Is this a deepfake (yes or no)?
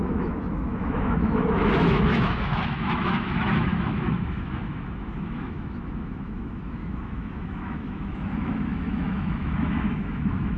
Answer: yes